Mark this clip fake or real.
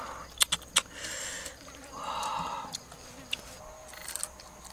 real